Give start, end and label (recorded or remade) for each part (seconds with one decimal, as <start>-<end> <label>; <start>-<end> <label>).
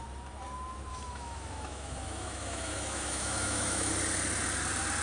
0.0-0.9 recorded; 0.9-3.9 remade; 3.9-5.0 recorded